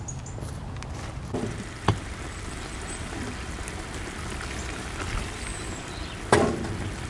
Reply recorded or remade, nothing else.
recorded